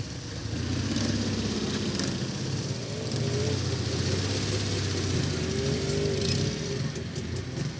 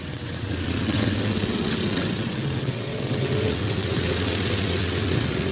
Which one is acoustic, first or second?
first